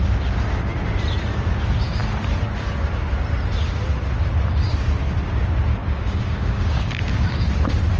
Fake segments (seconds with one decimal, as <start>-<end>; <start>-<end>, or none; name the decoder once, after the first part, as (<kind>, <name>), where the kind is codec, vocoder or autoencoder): 5.8-7.5 (codec, DAC)